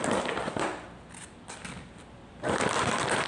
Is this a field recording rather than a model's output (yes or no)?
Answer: yes